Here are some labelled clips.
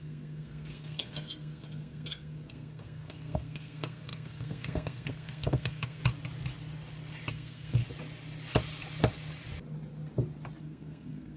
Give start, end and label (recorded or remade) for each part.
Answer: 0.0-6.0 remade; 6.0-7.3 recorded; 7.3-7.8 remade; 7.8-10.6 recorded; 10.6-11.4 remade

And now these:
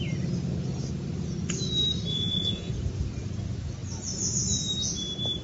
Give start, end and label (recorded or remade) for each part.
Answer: 0.0-2.1 recorded; 2.1-2.7 remade; 2.7-5.4 recorded

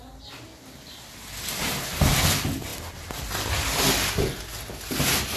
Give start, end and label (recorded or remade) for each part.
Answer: 0.0-5.4 recorded

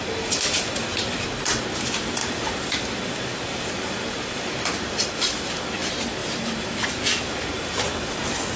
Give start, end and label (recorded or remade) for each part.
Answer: 0.0-2.2 recorded; 2.2-5.5 remade; 5.5-6.2 recorded; 6.2-7.3 remade; 7.3-8.6 recorded

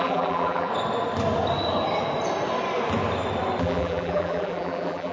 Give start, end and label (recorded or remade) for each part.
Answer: 0.0-0.7 remade; 0.7-3.6 recorded; 3.6-5.1 remade